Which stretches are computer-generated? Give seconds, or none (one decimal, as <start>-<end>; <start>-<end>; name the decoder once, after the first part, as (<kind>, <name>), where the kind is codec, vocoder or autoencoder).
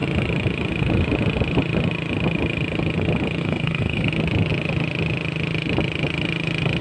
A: 3.4-4.1 (codec, SNAC)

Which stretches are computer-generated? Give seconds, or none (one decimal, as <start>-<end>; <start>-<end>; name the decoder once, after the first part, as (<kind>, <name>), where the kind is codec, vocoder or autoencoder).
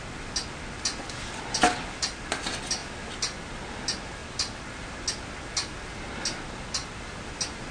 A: none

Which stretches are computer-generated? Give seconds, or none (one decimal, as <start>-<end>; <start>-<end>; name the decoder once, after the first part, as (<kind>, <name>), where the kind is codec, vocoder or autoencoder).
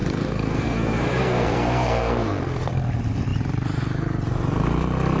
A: 0.0-2.8 (codec, SNAC)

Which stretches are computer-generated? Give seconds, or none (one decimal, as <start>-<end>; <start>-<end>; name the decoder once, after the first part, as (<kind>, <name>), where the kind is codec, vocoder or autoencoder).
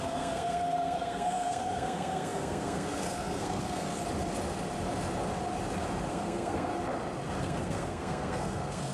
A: 0.0-4.0 (codec, SNAC); 6.1-6.7; 7.4-8.9